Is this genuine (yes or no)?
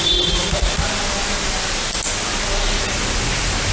yes